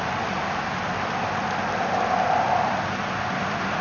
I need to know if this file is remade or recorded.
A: recorded